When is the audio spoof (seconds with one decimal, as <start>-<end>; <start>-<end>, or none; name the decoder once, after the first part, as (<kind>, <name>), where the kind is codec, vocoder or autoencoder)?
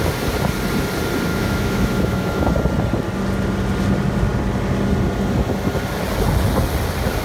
1.3-2.5 (autoencoder, DAC-VAE)